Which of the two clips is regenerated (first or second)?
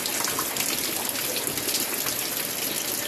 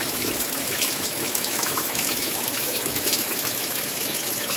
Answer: second